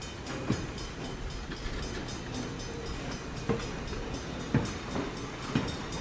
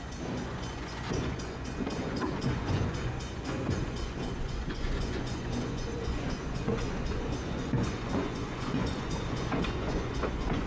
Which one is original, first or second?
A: first